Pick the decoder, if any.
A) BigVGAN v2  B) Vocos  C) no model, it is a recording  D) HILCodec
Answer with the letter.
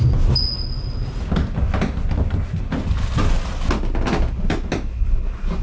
C